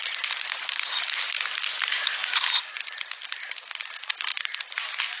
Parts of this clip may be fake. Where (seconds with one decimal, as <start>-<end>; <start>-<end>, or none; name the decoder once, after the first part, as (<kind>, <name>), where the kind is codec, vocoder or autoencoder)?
none

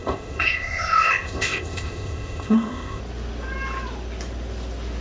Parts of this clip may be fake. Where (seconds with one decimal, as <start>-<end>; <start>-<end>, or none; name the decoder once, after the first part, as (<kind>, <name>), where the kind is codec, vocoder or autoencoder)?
0.0-3.0 (codec, ZipCodec)

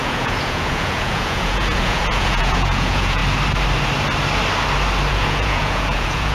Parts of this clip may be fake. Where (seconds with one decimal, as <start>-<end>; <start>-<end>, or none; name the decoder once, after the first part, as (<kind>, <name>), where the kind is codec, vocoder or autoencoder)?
0.0-3.2 (vocoder, Vocos); 5.1-6.3

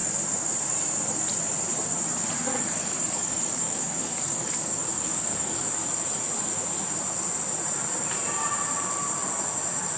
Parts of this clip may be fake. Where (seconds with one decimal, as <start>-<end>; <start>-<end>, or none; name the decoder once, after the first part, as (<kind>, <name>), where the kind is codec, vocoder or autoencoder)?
2.5-5.7 (codec, DAC)

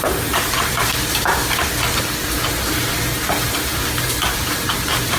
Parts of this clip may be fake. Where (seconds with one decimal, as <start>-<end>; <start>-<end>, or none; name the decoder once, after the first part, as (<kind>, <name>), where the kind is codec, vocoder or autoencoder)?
0.0-1.4 (vocoder, BigVGAN v2); 2.7-5.2

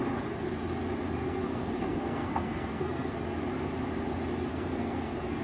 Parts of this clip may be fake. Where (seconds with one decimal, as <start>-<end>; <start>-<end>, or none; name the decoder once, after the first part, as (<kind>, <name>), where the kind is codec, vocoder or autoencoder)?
1.2-3.2 (codec, SNAC); 4.5-5.4